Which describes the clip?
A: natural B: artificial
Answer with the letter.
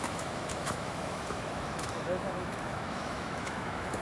B